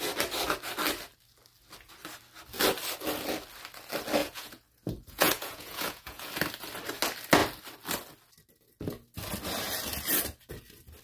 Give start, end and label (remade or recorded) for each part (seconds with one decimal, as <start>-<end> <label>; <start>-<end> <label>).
0.0-4.2 recorded; 4.2-6.3 remade; 6.3-11.0 recorded